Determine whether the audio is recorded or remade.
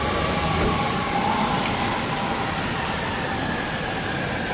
recorded